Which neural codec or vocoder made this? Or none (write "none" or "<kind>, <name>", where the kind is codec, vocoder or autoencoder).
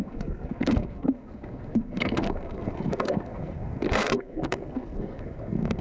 codec, SNAC